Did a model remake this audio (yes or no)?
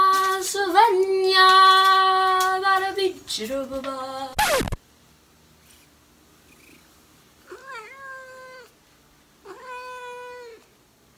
no